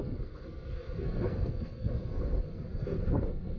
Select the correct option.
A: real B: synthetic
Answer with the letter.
B